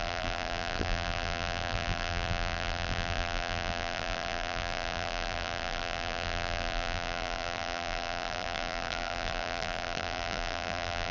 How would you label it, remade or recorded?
remade